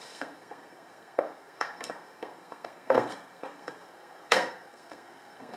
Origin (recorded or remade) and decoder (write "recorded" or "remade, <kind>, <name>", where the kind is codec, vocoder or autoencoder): remade, codec, SNAC